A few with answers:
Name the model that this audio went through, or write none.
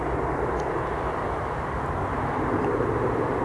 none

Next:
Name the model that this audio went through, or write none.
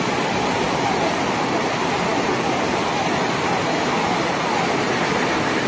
none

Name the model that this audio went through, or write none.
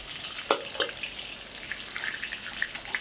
none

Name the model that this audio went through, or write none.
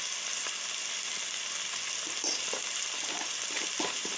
none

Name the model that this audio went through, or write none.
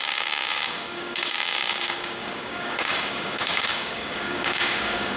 codec, DAC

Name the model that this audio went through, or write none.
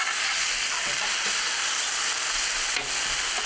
none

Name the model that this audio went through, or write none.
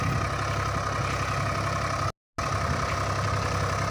none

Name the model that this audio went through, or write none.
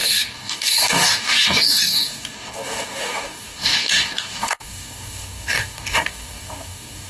codec, DAC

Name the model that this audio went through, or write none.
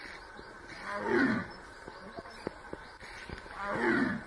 none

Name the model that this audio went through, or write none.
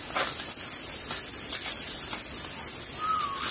none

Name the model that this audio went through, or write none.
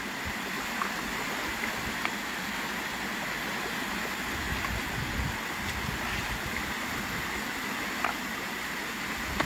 none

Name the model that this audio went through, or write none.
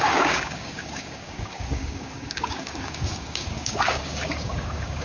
codec, DAC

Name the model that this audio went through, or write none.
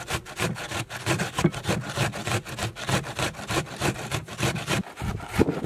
none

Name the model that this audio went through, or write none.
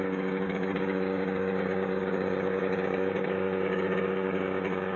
codec, DAC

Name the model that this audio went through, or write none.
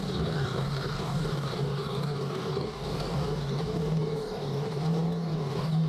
codec, DAC